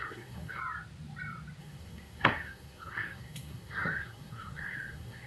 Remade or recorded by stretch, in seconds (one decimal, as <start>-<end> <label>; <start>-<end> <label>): 0.0-0.6 remade; 0.6-1.6 recorded; 1.6-5.3 remade